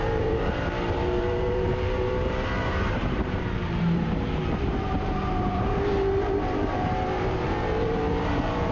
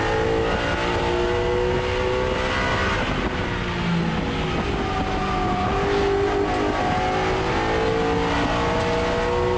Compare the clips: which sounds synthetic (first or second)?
first